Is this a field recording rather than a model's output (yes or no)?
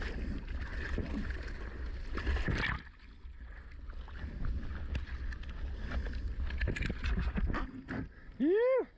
yes